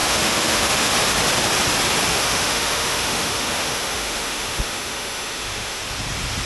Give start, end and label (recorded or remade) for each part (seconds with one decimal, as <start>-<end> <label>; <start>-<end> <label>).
0.0-0.9 remade; 0.9-2.1 recorded; 2.1-5.8 remade; 5.8-6.5 recorded

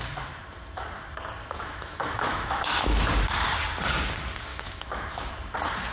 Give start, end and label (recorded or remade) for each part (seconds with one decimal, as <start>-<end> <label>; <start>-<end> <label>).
0.0-1.4 recorded; 1.4-3.0 remade; 3.0-4.5 recorded; 4.5-5.3 remade; 5.3-5.9 recorded

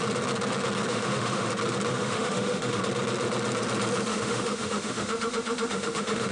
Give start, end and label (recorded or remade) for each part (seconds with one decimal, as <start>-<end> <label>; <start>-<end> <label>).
0.0-0.9 recorded; 0.9-1.5 remade; 1.5-1.9 recorded; 1.9-2.8 remade; 2.8-4.1 recorded; 4.1-6.3 remade

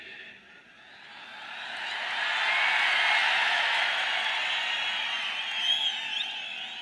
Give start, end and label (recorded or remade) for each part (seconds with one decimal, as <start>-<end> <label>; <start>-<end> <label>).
0.0-6.8 recorded

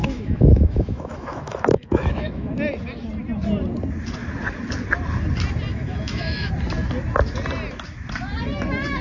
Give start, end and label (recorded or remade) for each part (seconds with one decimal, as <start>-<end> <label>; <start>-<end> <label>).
0.0-2.5 remade; 2.5-5.7 recorded; 5.7-6.5 remade; 6.5-9.0 recorded

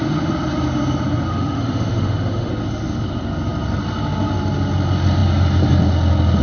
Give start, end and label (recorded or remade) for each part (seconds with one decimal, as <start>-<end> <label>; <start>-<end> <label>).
0.0-1.3 recorded; 1.3-2.5 remade; 2.5-6.4 recorded

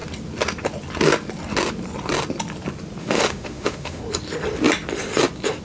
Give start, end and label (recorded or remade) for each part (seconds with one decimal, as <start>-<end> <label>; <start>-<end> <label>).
0.0-3.0 recorded; 3.0-4.0 remade; 4.0-5.6 recorded

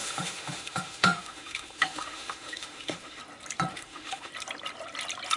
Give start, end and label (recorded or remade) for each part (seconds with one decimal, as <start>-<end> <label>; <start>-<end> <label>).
0.0-3.2 remade; 3.2-3.7 recorded; 3.7-4.3 remade; 4.3-5.4 recorded